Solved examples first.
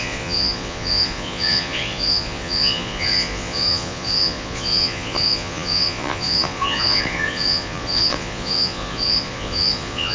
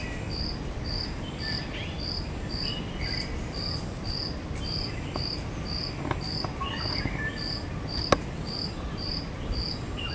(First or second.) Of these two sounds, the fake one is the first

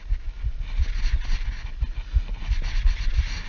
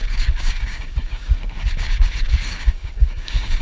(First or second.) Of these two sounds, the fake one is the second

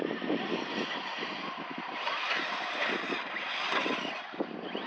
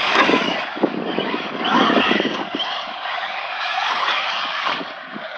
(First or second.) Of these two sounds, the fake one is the second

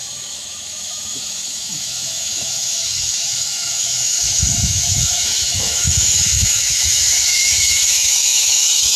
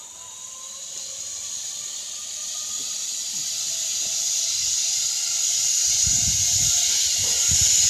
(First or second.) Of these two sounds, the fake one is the first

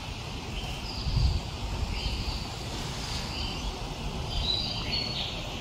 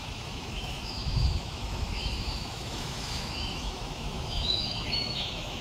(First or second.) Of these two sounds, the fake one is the second